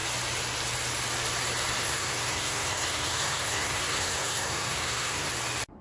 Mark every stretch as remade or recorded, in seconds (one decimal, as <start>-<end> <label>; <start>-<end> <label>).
0.0-1.8 recorded; 1.8-5.3 remade; 5.3-5.8 recorded